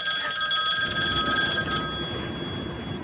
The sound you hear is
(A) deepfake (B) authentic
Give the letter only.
B